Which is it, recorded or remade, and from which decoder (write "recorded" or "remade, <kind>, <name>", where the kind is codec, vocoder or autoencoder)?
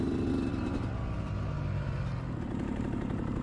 recorded